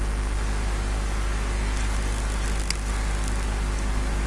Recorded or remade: recorded